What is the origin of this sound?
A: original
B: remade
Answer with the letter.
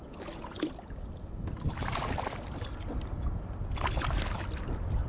A